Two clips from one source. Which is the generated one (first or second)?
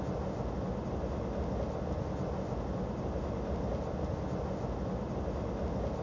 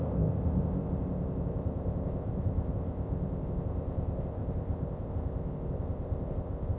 second